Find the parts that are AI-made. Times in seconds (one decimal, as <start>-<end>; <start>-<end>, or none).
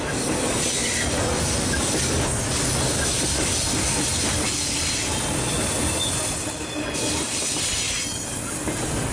none